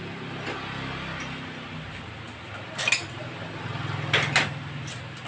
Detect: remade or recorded recorded